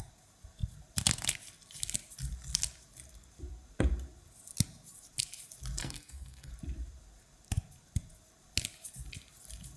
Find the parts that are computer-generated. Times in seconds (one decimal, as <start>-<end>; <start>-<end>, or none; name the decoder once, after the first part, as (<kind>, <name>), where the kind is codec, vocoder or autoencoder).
5.8-6.5 (codec, SNAC)